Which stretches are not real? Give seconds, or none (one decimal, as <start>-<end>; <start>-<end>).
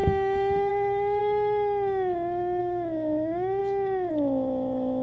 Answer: 0.7-1.2; 2.6-3.6; 4.1-5.0